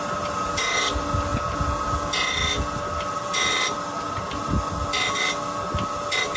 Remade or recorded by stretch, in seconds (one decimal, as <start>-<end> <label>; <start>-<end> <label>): 0.0-6.4 recorded